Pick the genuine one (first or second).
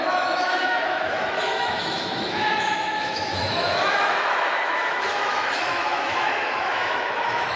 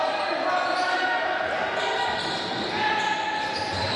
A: second